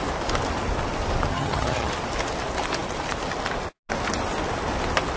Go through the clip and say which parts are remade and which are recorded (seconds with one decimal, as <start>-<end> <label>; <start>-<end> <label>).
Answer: 0.0-1.3 recorded; 1.3-1.9 remade; 1.9-5.2 recorded